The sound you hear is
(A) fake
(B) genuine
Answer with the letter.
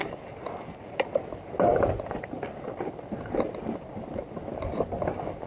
B